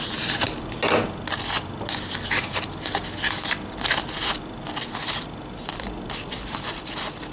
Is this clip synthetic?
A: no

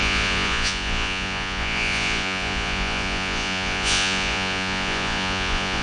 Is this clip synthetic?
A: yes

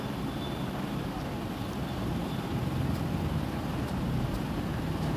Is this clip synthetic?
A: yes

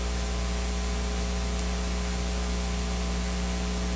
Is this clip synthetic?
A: no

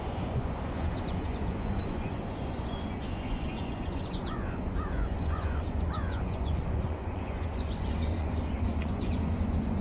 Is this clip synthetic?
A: yes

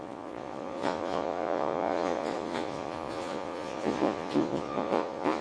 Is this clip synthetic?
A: yes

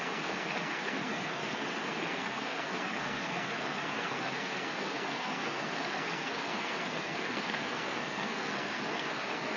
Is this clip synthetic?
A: yes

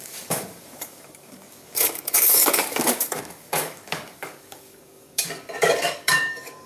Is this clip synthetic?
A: yes